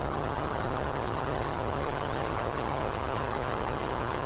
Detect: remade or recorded remade